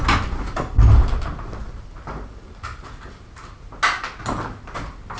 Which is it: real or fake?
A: real